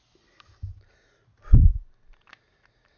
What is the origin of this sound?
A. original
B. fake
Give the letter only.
A